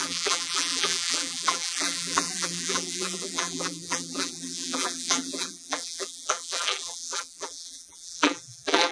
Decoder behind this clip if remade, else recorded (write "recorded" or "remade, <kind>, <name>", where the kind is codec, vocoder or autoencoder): remade, vocoder, BigVGAN v2